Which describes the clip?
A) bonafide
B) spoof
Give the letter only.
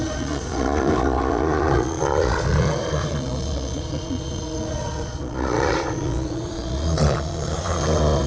B